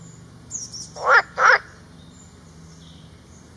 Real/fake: real